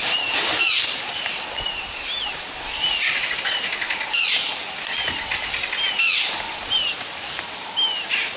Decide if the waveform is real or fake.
fake